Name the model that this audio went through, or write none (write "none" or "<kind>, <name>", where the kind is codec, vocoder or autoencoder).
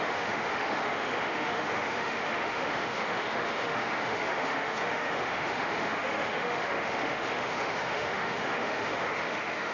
autoencoder, DAC-VAE